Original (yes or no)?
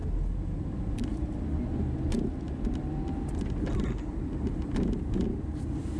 yes